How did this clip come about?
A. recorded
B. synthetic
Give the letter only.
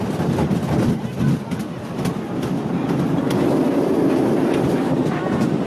A